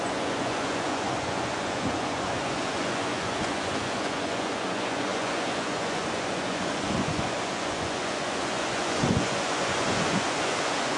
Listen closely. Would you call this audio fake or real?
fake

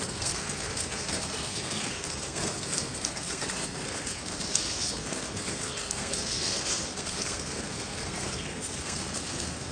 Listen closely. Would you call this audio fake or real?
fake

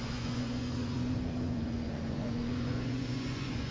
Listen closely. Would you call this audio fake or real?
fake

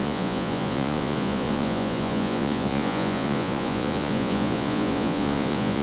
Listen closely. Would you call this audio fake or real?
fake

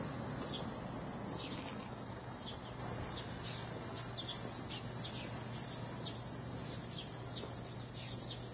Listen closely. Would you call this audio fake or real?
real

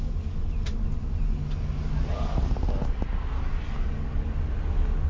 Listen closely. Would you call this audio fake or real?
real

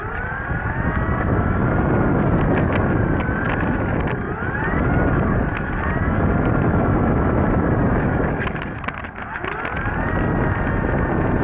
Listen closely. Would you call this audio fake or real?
real